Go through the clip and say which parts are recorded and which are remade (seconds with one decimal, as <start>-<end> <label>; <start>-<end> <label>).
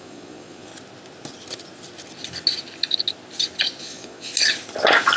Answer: 0.0-0.7 remade; 0.7-3.8 recorded; 3.8-4.3 remade; 4.3-5.2 recorded